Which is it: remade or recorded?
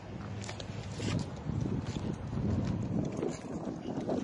recorded